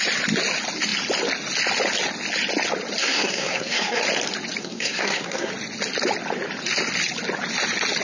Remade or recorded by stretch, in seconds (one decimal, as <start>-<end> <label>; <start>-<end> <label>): 0.0-3.0 recorded; 3.0-4.0 remade; 4.0-4.6 recorded; 4.6-5.5 remade; 5.5-8.0 recorded

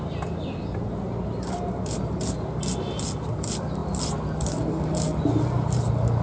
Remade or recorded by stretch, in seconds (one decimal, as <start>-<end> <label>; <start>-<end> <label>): 0.0-6.2 recorded

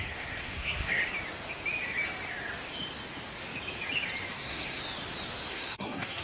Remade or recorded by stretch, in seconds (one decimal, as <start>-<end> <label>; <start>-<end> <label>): 0.0-1.0 remade; 1.0-4.3 recorded; 4.3-4.8 remade; 4.8-5.5 recorded; 5.5-6.2 remade

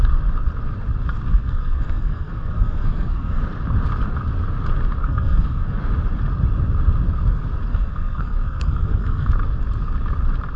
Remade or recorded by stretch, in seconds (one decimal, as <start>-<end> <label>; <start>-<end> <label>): 0.0-1.3 recorded; 1.3-3.4 remade; 3.4-5.0 recorded; 5.0-5.8 remade; 5.8-7.7 recorded; 7.7-9.3 remade; 9.3-10.6 recorded

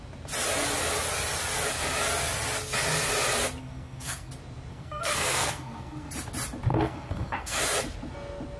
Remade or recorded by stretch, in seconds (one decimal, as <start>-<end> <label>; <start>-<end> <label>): 0.0-3.6 recorded; 3.6-4.3 remade; 4.3-4.7 recorded; 4.7-6.1 remade; 6.1-6.7 recorded; 6.7-7.6 remade; 7.6-8.6 recorded